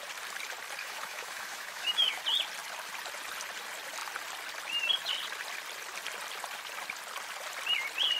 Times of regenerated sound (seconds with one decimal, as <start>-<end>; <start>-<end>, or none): 0.8-2.2